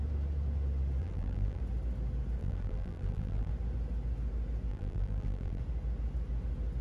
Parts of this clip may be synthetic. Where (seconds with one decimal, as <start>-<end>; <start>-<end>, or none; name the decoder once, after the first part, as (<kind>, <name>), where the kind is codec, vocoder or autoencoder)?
1.0-1.6 (vocoder, BigVGAN v2); 2.4-3.5; 4.7-5.6